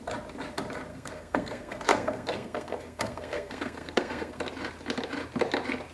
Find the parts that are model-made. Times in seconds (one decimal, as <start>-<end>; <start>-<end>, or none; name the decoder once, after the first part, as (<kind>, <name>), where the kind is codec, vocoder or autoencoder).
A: 0.9-4.4 (codec, SNAC)